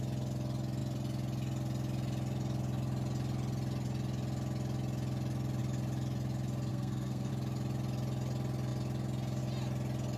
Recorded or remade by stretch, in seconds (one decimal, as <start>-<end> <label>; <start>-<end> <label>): 0.0-6.7 recorded; 6.7-7.3 remade; 7.3-10.2 recorded